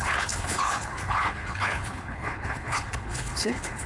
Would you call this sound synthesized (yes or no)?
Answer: yes